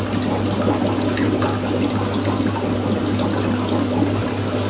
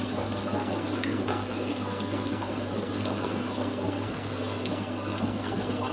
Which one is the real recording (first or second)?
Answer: first